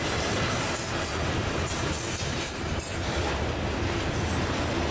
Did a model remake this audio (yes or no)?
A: no